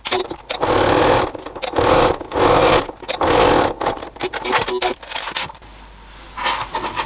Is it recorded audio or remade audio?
recorded